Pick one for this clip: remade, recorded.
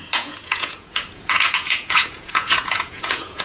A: remade